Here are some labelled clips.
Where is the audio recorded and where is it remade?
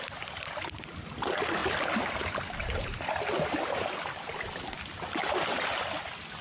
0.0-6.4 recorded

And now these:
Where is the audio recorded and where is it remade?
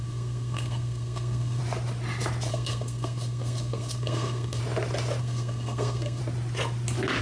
0.0-1.6 remade; 1.6-2.5 recorded; 2.5-4.6 remade; 4.6-5.2 recorded; 5.2-6.2 remade; 6.2-7.2 recorded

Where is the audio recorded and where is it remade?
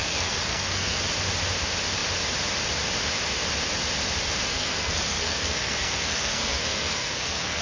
0.0-1.0 remade; 1.0-4.5 recorded; 4.5-7.6 remade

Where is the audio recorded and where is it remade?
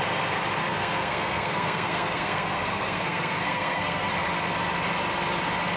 0.0-0.6 recorded; 0.6-4.1 remade; 4.1-5.8 recorded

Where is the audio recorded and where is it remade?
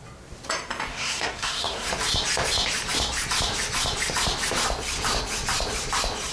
0.0-0.9 recorded; 0.9-1.9 remade; 1.9-6.3 recorded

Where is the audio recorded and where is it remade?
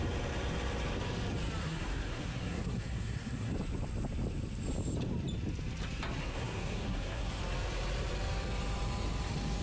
0.0-1.6 recorded; 1.6-3.5 remade; 3.5-6.2 recorded; 6.2-7.4 remade; 7.4-9.6 recorded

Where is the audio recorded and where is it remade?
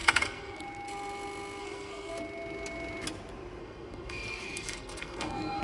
0.0-0.6 remade; 0.6-1.6 recorded; 1.6-2.1 remade; 2.1-3.6 recorded; 3.6-5.6 remade